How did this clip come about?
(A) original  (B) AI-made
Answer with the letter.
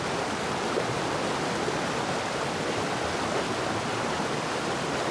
A